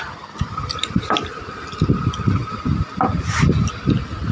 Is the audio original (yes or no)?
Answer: yes